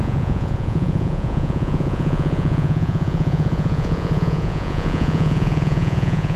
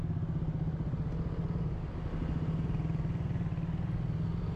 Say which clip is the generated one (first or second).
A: first